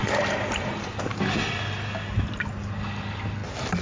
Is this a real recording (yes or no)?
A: yes